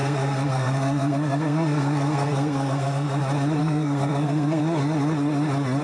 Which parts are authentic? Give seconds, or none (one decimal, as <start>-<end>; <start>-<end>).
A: 3.2-3.6; 4.6-5.8